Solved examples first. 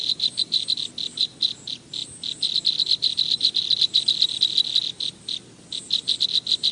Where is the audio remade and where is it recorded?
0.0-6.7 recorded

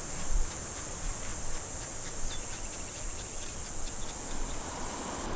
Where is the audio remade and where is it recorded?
0.0-5.4 recorded

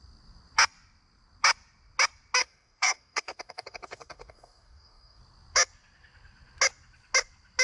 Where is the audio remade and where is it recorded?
0.0-2.4 recorded; 2.4-5.2 remade; 5.2-7.6 recorded

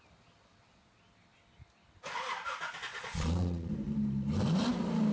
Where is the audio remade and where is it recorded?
0.0-2.9 recorded; 2.9-3.7 remade; 3.7-5.1 recorded

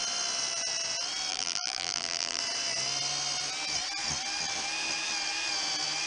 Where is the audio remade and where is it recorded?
0.0-1.3 recorded; 1.3-2.4 remade; 2.4-6.1 recorded

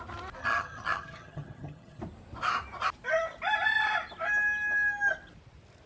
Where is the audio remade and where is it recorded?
0.0-0.4 recorded; 0.4-2.0 remade; 2.0-5.9 recorded

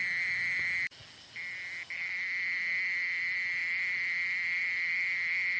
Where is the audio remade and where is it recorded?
0.0-5.6 recorded